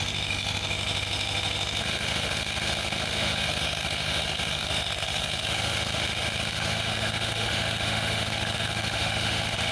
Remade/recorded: remade